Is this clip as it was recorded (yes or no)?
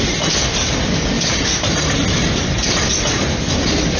no